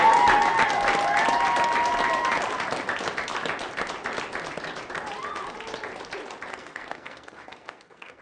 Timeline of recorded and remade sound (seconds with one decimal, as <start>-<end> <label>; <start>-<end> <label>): 0.0-6.5 recorded; 6.5-8.2 remade